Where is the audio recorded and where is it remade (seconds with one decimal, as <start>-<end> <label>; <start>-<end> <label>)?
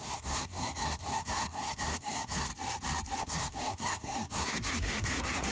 0.0-2.5 remade; 2.5-3.2 recorded; 3.2-5.5 remade